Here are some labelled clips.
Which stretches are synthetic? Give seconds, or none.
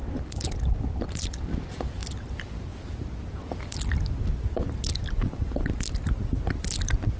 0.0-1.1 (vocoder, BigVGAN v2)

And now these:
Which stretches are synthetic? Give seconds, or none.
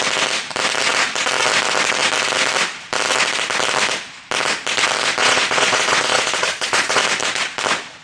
5.2-7.0 (vocoder, Vocos)